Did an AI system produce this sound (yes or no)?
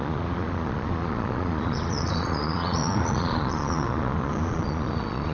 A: yes